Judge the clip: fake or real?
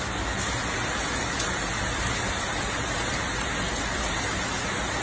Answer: real